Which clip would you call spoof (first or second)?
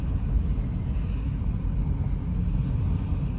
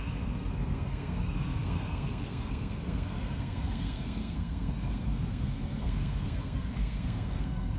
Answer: second